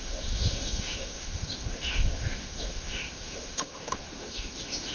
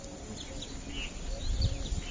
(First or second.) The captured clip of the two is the second